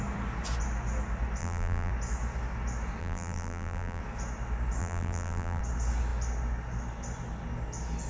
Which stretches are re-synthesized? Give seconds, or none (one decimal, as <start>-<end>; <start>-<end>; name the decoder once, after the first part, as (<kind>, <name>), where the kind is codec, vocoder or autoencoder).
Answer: 1.4-1.9 (vocoder, BigVGAN v2); 3.0-4.0; 4.8-5.6